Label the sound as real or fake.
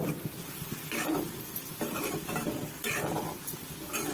real